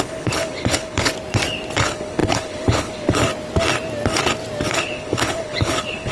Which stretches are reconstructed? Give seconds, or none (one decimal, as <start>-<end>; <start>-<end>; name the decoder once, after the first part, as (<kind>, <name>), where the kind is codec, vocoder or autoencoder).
0.0-1.1 (codec, HILCodec); 1.8-3.3; 4.7-6.1